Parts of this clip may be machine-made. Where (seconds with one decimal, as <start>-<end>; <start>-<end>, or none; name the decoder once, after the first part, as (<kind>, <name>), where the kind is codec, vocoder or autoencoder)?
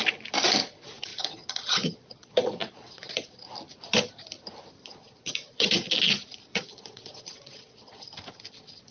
1.1-3.5 (vocoder, Vocos); 4.8-5.9; 6.5-8.1